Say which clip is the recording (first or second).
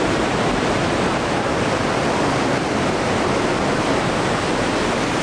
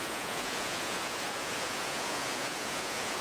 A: first